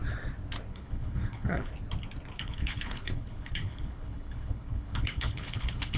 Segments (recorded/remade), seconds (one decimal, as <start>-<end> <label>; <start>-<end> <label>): 0.0-0.7 recorded; 0.7-1.7 remade; 1.7-2.4 recorded; 2.4-6.0 remade